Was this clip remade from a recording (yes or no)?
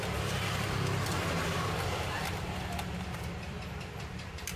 yes